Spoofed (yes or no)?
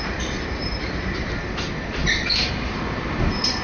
yes